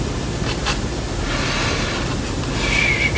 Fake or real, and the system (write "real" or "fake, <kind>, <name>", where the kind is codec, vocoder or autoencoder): real